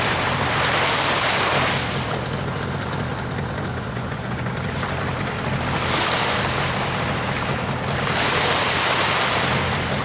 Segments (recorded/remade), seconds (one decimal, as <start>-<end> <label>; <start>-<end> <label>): 0.0-3.7 recorded; 3.7-4.5 remade; 4.5-10.0 recorded